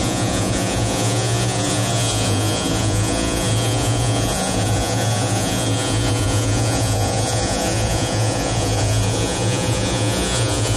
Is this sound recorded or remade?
remade